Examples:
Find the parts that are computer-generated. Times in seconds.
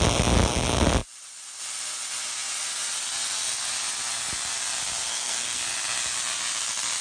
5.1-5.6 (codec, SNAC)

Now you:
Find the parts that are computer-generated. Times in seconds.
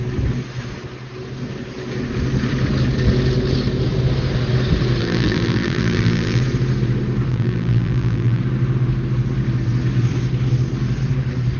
5.0-6.4 (vocoder, BigVGAN v2); 7.3-8.4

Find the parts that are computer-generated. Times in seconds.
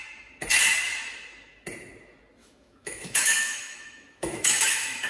2.4-5.1 (autoencoder, DAC-VAE)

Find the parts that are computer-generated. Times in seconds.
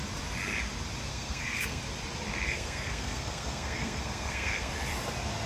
1.1-1.8 (codec, SNAC); 2.3-4.7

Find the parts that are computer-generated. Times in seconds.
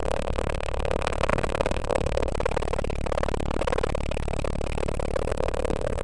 0.0-2.3 (codec, SNAC); 5.3-6.0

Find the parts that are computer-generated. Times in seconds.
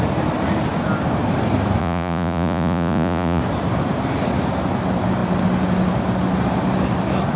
1.8-3.4 (vocoder, Vocos)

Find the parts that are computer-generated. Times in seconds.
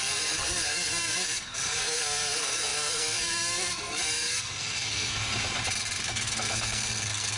0.0-5.2 (codec, SNAC); 6.0-7.4